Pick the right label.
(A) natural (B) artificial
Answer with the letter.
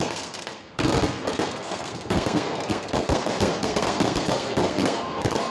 B